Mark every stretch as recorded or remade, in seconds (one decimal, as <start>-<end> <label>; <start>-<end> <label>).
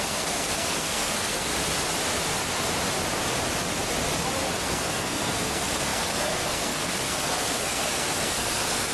0.0-1.5 remade; 1.5-4.6 recorded; 4.6-8.9 remade